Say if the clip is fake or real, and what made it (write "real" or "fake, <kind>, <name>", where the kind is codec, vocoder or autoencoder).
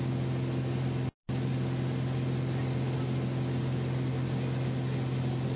real